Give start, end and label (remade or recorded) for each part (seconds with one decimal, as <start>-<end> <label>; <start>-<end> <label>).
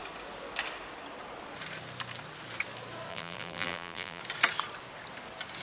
0.0-3.1 recorded; 3.1-4.2 remade; 4.2-5.6 recorded